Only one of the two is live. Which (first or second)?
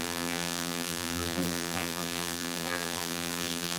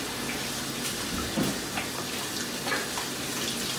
second